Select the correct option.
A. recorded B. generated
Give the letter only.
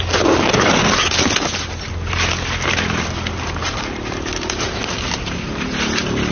A